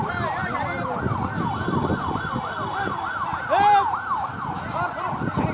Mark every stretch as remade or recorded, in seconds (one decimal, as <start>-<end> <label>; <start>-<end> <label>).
0.0-5.5 recorded